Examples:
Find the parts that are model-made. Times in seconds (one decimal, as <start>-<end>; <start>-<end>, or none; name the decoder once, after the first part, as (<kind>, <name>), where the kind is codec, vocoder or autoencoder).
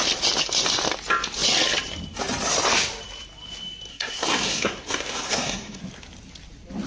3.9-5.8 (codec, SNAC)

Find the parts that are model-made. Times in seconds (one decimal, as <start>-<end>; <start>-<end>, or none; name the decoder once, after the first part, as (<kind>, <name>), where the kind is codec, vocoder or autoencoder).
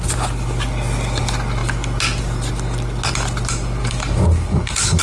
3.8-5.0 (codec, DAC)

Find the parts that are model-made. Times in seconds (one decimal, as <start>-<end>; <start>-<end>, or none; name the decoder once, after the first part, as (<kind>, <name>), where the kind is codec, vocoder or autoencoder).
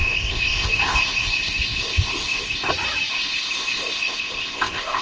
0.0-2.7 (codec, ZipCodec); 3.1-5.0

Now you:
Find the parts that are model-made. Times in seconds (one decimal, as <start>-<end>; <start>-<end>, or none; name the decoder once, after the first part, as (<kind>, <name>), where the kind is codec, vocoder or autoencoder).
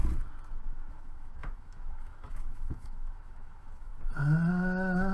0.9-3.9 (autoencoder, DAC-VAE); 4.5-5.1